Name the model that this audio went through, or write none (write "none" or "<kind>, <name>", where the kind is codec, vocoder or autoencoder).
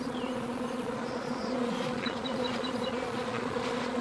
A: vocoder, Vocos